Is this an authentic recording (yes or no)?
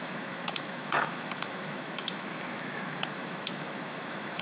no